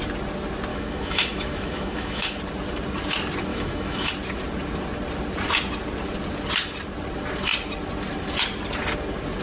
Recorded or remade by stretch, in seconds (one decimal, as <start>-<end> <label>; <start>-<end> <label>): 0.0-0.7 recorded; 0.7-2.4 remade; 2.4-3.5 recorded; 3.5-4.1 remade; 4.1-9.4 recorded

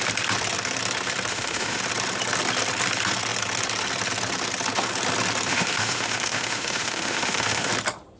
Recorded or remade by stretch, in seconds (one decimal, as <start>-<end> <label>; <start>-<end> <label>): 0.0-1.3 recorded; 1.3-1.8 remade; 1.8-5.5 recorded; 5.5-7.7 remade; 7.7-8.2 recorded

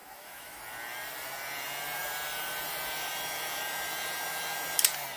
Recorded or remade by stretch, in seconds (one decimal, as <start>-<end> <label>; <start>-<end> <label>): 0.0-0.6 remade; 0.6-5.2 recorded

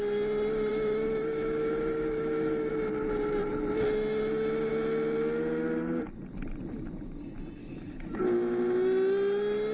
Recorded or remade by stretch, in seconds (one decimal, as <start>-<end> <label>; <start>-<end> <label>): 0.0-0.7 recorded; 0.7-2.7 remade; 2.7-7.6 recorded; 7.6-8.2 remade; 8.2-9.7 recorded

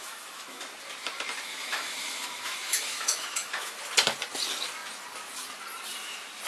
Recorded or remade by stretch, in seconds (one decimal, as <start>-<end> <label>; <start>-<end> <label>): 0.0-0.6 remade; 0.6-1.5 recorded; 1.5-3.8 remade; 3.8-6.5 recorded

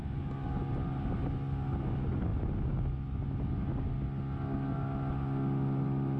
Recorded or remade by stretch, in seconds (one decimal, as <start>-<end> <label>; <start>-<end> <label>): 0.0-6.2 recorded

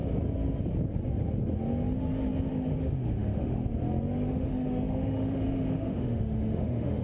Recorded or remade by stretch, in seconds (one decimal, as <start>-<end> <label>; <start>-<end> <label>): 0.0-2.5 recorded; 2.5-3.6 remade; 3.6-4.3 recorded; 4.3-7.0 remade